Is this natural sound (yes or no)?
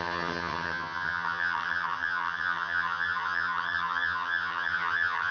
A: no